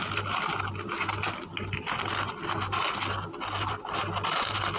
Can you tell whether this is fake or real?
real